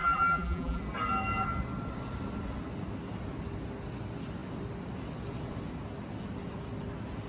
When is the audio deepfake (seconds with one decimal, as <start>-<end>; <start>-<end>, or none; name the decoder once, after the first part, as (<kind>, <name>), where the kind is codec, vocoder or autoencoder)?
0.0-0.8 (vocoder, BigVGAN v2)